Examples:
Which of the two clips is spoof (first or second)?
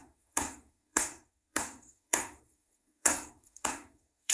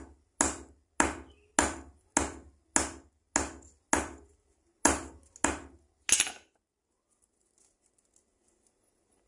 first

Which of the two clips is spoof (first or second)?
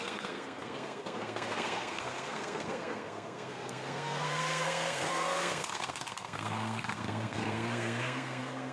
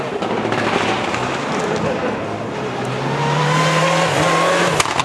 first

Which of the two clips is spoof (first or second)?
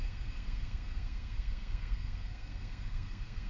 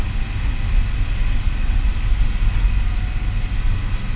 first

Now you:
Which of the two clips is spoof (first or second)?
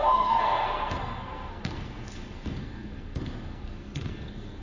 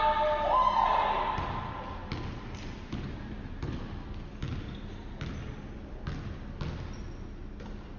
first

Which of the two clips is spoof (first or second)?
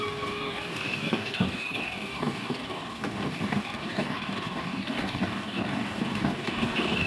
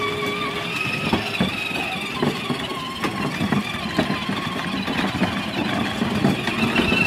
first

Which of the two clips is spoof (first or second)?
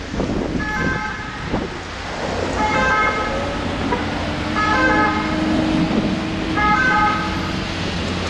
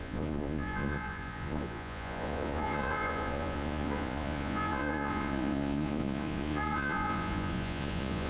second